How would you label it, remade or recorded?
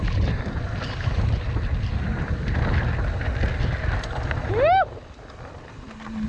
recorded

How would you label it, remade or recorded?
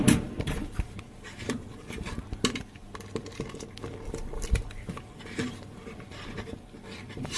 remade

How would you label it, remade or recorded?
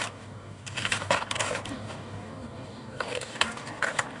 remade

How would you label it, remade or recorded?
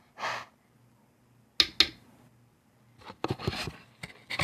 recorded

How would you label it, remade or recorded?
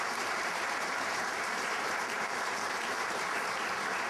remade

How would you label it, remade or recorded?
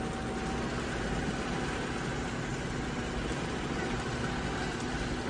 recorded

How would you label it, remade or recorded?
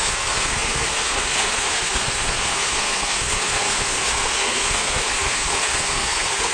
remade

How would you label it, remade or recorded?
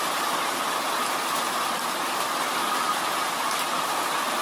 recorded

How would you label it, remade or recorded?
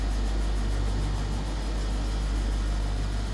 recorded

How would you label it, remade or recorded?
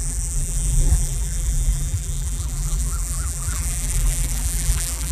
remade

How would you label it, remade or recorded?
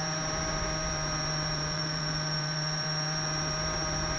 remade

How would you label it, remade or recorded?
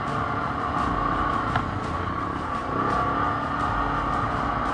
recorded